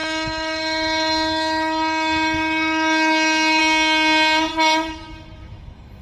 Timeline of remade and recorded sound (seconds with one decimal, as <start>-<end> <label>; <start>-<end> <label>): 0.0-3.6 remade; 3.6-4.5 recorded; 4.5-6.0 remade